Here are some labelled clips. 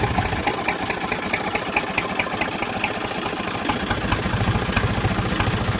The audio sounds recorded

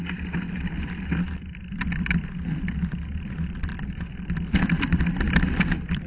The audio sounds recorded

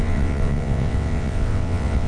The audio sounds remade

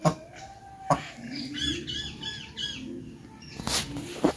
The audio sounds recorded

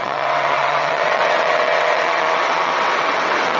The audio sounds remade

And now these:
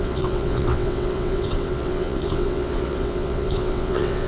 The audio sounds remade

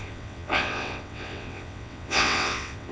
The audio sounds remade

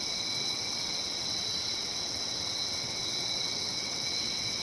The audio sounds remade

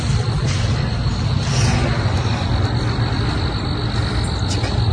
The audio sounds recorded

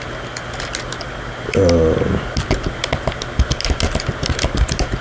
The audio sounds recorded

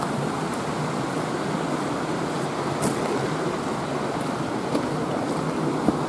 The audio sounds recorded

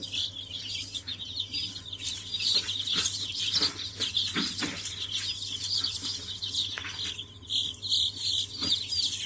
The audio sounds recorded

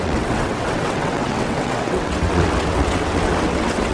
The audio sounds remade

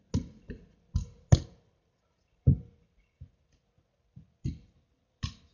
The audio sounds recorded